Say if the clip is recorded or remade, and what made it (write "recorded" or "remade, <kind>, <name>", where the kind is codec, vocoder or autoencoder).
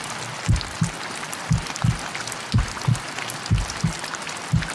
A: recorded